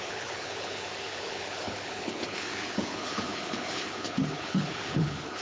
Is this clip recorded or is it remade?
remade